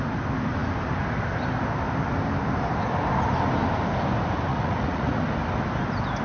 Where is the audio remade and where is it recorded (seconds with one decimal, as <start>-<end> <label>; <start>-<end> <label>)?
0.0-4.5 recorded; 4.5-5.2 remade; 5.2-6.2 recorded